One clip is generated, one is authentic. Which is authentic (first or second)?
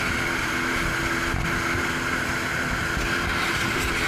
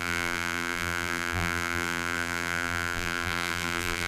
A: first